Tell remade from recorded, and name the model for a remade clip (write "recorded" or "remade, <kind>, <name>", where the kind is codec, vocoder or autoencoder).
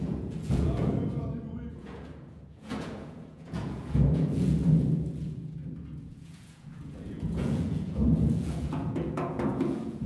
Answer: remade, vocoder, Vocos